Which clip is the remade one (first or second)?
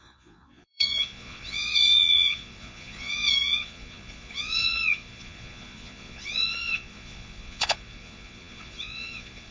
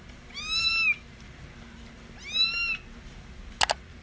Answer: first